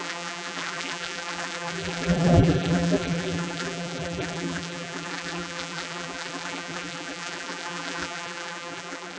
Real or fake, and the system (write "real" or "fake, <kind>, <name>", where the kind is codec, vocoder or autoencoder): fake, vocoder, BigVGAN v2